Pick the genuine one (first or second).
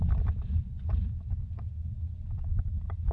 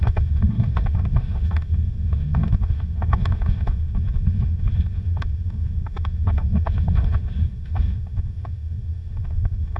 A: first